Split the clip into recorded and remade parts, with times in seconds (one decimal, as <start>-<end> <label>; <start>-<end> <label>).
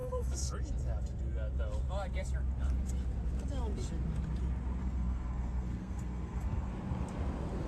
0.0-0.5 remade; 0.5-4.8 recorded; 4.8-6.7 remade; 6.7-7.7 recorded